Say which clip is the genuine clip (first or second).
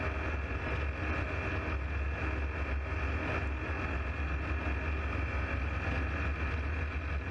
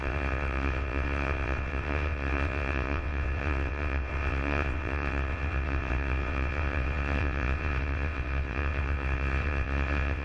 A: first